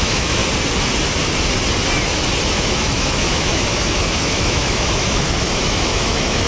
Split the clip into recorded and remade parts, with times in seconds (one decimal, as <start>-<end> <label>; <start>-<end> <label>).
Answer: 0.0-0.4 remade; 0.4-2.5 recorded; 2.5-6.5 remade